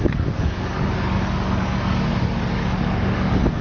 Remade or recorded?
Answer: remade